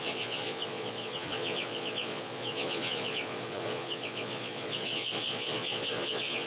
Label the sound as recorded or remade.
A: remade